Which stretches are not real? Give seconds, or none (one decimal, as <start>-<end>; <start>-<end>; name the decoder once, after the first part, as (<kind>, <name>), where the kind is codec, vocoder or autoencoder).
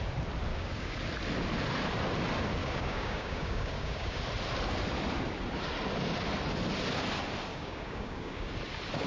0.5-1.0 (codec, DAC); 2.6-4.2; 7.5-8.5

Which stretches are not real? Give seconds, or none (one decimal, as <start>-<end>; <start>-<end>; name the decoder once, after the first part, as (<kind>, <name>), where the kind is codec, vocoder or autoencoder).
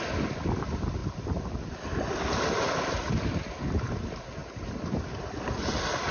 none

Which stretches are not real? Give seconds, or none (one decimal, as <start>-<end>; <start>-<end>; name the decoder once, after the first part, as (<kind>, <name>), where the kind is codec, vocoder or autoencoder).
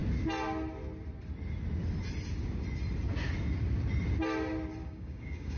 4.8-5.6 (codec, DAC)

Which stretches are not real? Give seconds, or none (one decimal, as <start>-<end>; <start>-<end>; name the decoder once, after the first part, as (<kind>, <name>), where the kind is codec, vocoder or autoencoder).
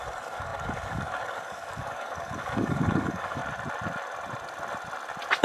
0.0-3.4 (codec, DAC)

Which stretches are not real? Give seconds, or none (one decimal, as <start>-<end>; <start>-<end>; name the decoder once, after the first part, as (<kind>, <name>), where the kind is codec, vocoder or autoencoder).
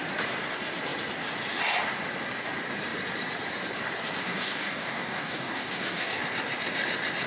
4.2-6.2 (codec, DAC)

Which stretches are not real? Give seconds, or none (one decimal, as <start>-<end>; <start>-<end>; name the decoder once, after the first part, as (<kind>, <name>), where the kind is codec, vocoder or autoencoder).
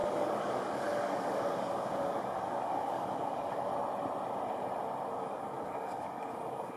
0.0-3.7 (codec, DAC); 5.1-6.8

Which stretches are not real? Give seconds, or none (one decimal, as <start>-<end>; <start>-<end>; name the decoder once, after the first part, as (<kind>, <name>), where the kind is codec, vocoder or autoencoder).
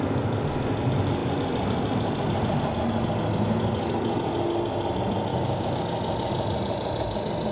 5.3-5.8 (codec, DAC)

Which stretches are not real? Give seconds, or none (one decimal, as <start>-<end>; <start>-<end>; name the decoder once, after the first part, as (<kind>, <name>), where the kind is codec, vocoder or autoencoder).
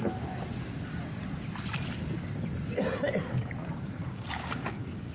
4.0-5.1 (codec, DAC)